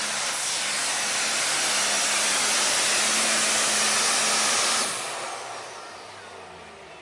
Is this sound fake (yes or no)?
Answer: no